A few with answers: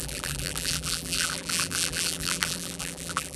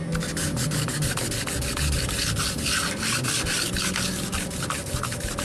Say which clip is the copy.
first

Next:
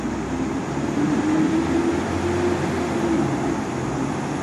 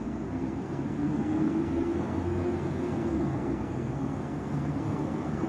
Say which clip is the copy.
second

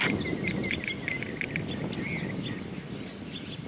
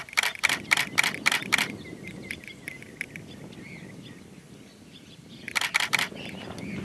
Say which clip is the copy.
second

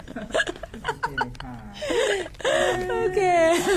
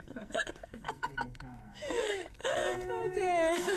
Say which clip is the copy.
second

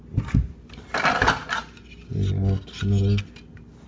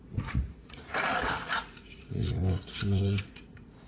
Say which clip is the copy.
second